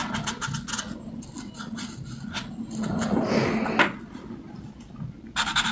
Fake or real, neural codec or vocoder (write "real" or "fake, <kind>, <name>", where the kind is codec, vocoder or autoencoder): real